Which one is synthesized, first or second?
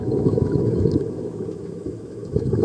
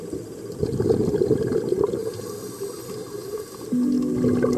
first